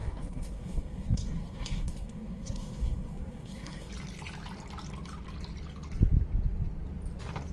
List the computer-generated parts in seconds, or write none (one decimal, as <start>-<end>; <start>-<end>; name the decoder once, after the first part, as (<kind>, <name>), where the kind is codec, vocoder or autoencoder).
0.0-3.9 (codec, SNAC)

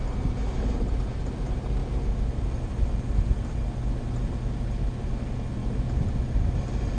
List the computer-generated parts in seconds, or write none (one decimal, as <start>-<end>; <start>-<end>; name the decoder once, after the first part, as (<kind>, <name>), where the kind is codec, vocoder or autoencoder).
none

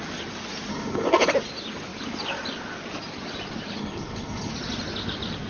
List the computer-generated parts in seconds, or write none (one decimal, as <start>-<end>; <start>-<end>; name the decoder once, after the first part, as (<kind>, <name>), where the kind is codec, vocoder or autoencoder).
0.7-1.3 (codec, HILCodec); 3.8-4.5

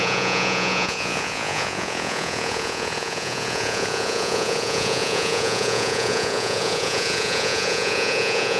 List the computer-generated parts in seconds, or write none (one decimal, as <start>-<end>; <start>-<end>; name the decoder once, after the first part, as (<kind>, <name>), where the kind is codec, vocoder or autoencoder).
0.0-8.6 (vocoder, Vocos)

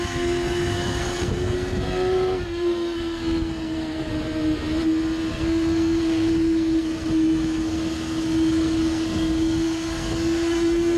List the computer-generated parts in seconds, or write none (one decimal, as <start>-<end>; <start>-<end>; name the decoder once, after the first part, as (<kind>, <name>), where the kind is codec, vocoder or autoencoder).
0.0-4.1 (codec, SNAC); 5.3-11.0

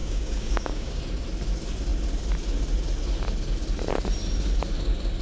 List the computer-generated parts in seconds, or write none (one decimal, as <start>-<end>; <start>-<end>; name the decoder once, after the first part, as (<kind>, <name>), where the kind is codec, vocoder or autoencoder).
0.0-1.0 (codec, DAC)